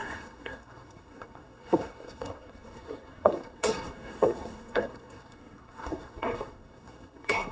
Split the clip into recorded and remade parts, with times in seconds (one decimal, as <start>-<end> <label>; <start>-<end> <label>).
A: 0.0-7.5 remade